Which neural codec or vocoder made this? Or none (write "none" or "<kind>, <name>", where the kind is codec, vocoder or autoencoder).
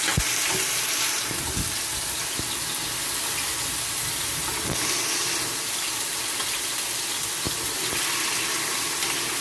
none